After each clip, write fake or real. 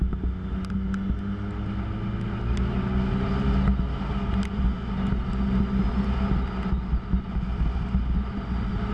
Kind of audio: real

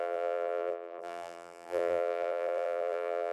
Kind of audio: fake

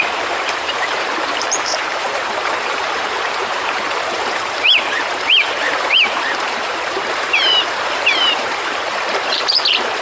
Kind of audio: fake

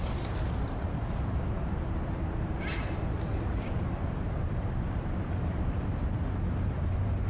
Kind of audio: fake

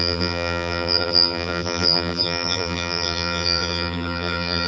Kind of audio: fake